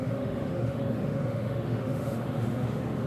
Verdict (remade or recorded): remade